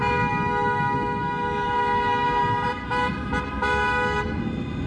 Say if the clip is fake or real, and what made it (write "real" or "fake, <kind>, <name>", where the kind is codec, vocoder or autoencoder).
real